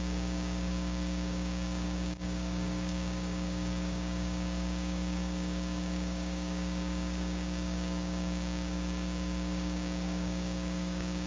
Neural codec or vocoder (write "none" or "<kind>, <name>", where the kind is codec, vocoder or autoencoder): codec, DAC